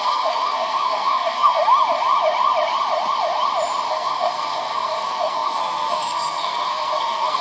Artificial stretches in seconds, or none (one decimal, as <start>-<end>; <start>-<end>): 0.0-1.6; 3.9-7.4